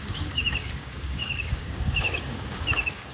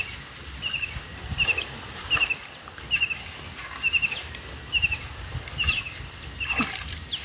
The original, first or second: second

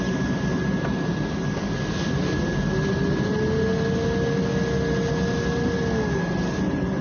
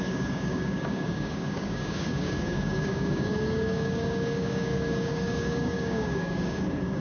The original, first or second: first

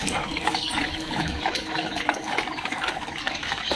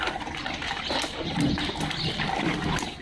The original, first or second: second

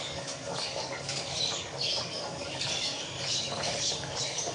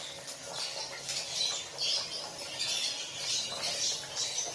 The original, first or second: second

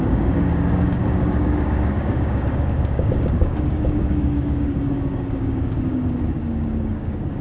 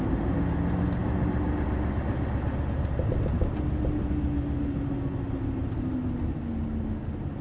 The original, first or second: second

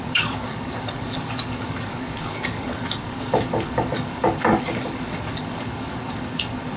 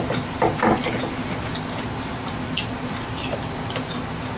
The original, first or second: second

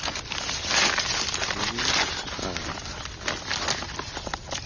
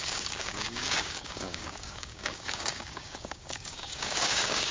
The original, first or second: first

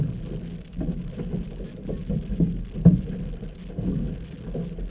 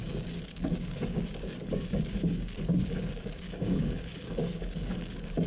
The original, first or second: first